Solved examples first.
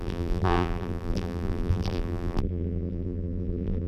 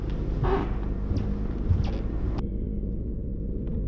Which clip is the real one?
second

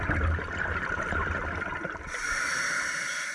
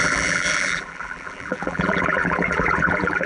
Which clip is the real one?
first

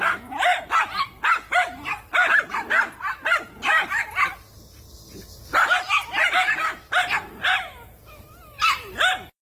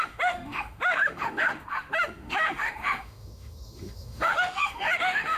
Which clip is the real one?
first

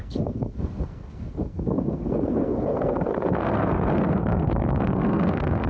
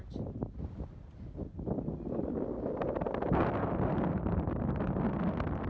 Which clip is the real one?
second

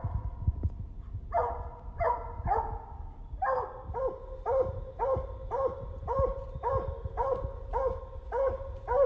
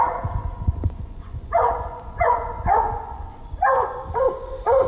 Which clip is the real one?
first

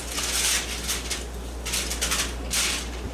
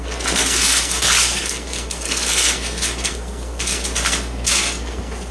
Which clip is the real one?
first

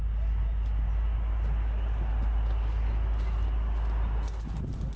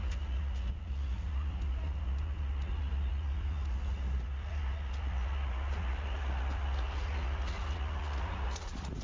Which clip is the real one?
first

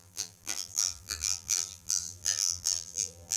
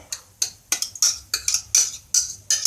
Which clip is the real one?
second